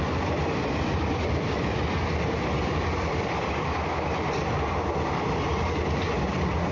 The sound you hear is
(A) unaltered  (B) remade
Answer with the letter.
A